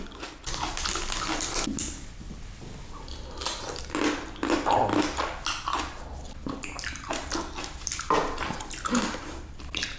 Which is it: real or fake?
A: real